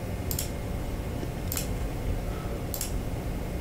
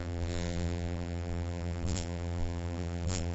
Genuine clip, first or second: first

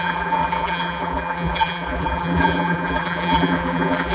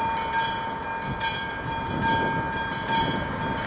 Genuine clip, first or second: second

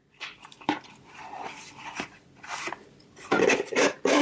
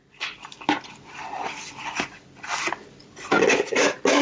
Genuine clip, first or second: second